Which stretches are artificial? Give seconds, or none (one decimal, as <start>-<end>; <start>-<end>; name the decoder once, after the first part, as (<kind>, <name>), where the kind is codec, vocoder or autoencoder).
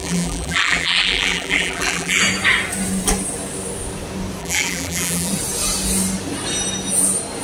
0.0-2.2 (vocoder, BigVGAN v2); 4.4-5.3